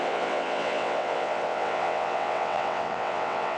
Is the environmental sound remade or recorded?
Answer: remade